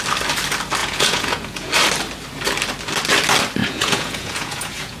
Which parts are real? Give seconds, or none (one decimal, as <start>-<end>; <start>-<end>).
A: 0.0-0.8; 1.7-3.6